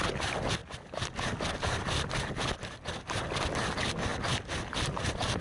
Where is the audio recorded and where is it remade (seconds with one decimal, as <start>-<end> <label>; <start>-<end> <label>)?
0.0-5.4 recorded